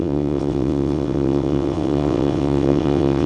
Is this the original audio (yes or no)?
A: no